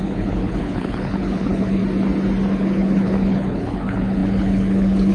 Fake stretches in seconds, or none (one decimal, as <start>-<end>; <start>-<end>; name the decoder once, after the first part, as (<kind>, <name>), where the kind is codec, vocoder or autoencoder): 0.0-1.8 (codec, HILCodec); 2.5-5.1